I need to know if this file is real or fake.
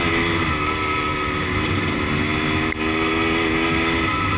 real